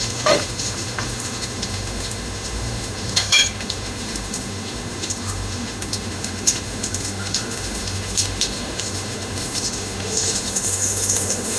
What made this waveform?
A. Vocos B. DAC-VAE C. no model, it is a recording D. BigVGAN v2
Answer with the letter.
B